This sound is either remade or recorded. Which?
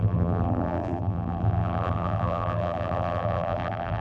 remade